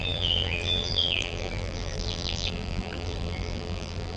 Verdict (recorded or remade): remade